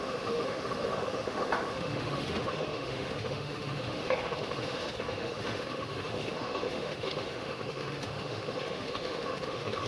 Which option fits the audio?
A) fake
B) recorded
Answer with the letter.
A